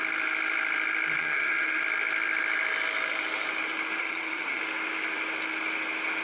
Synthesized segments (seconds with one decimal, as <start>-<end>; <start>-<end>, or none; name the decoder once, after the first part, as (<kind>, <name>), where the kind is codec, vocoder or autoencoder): 1.2-1.8 (vocoder, HiFi-GAN); 4.0-4.6